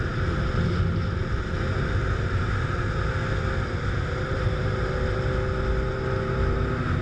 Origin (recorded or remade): recorded